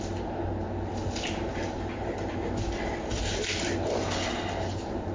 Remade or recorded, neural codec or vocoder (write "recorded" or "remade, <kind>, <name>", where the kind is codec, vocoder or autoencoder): recorded